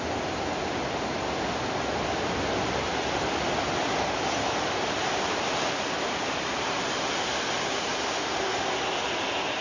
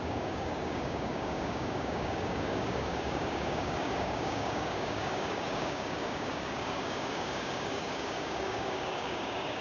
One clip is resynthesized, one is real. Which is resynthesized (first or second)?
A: second